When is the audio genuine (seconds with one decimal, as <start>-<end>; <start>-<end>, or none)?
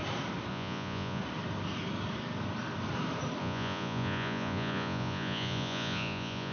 0.0-0.5; 1.2-3.4